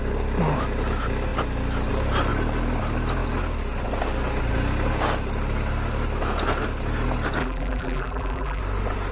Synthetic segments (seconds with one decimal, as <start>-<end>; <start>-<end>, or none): 7.4-8.6